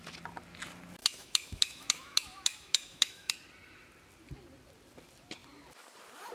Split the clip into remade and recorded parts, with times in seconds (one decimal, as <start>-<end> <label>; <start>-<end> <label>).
0.0-1.0 recorded; 1.0-3.3 remade; 3.3-6.3 recorded